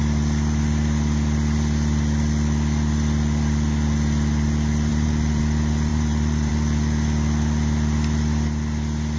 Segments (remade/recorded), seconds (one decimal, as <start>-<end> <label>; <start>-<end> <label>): 0.0-4.9 recorded; 4.9-5.4 remade; 5.4-5.9 recorded; 5.9-6.5 remade; 6.5-9.2 recorded

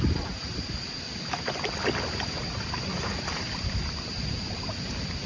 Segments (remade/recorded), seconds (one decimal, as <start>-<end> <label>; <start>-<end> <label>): 0.0-0.4 remade; 0.4-2.4 recorded; 2.4-5.3 remade

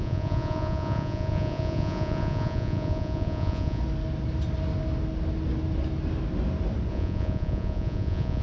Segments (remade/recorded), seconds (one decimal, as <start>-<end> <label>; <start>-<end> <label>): 0.0-3.8 remade; 3.8-6.9 recorded; 6.9-8.4 remade

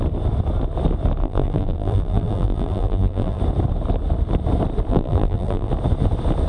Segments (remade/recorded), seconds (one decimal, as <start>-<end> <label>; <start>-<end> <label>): 0.0-1.2 recorded; 1.2-3.4 remade; 3.4-4.9 recorded; 4.9-5.7 remade; 5.7-6.5 recorded

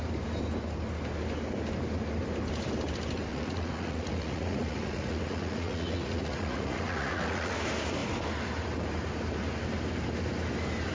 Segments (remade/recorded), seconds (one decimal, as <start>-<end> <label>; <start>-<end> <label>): 0.0-3.3 recorded; 3.3-7.5 remade; 7.5-10.9 recorded

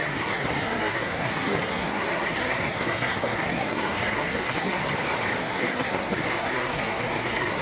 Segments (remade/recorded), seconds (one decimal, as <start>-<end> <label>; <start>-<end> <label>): 0.0-4.8 remade; 4.8-5.4 recorded; 5.4-7.6 remade

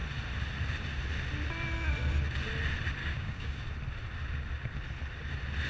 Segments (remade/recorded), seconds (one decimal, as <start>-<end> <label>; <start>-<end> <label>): 0.0-3.0 recorded; 3.0-3.6 remade; 3.6-5.7 recorded